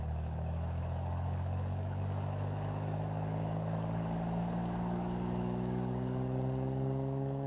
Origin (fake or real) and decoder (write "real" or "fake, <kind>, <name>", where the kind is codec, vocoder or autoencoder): fake, codec, DAC